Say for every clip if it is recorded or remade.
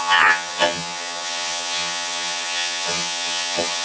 remade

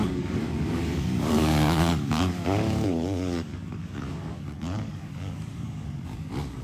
remade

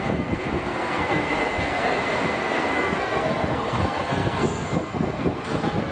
remade